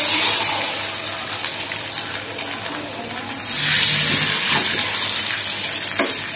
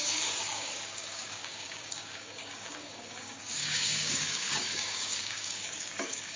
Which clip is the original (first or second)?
first